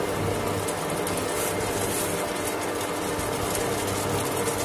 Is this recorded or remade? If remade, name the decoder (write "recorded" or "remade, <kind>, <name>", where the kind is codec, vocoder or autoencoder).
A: recorded